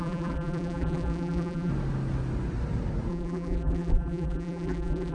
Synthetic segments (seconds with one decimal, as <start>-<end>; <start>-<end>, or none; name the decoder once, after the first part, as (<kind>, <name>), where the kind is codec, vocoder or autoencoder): 0.0-1.7 (vocoder, BigVGAN v2); 3.1-5.1